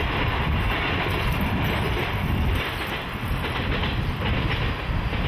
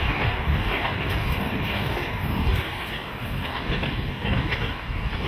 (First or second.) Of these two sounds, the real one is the first